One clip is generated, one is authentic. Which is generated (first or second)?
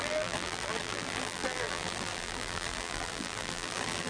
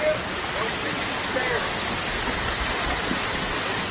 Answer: first